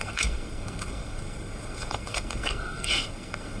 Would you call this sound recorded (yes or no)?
no